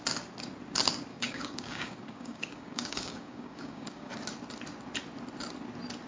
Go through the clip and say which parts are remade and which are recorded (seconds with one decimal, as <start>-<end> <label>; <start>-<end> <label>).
0.0-1.1 recorded; 1.1-4.1 remade; 4.1-6.1 recorded